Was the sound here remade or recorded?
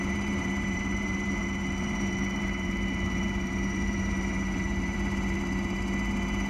remade